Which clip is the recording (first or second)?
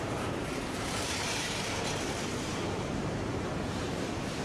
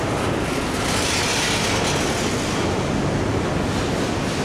second